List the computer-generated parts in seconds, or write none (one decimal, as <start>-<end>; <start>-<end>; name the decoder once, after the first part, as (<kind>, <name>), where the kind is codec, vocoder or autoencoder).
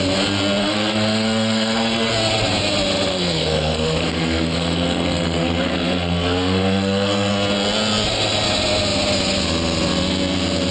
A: 0.6-2.1 (codec, SNAC); 3.1-7.3